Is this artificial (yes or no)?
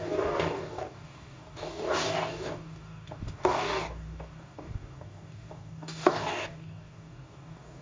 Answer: yes